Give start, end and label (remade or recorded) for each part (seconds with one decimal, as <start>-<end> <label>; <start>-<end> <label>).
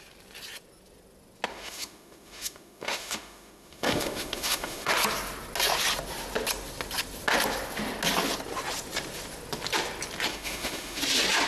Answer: 0.0-1.5 recorded; 1.5-4.9 remade; 4.9-10.3 recorded; 10.3-11.0 remade; 11.0-11.5 recorded